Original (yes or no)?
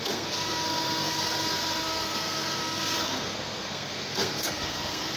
no